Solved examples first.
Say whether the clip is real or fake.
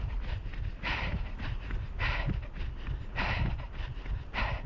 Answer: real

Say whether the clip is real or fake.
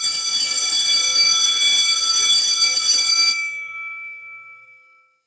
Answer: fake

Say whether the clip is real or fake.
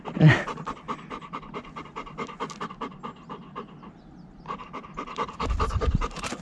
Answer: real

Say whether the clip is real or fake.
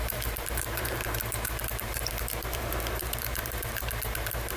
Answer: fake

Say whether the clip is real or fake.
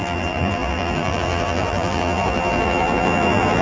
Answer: fake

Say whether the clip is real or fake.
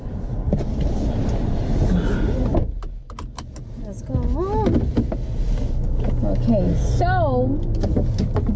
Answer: real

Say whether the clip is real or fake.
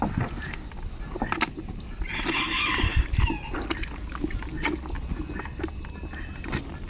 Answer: real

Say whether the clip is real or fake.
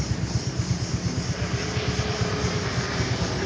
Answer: real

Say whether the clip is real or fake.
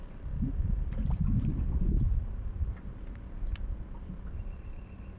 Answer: real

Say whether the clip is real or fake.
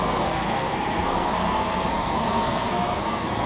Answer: fake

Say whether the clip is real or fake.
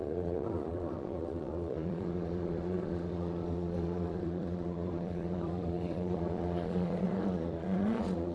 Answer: fake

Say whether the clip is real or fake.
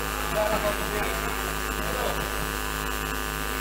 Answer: real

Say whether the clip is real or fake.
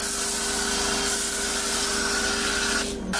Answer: real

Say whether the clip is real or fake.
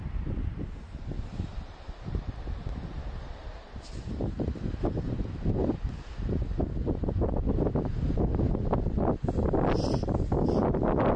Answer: real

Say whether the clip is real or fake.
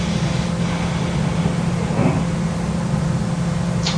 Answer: real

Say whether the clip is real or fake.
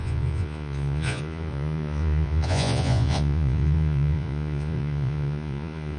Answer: fake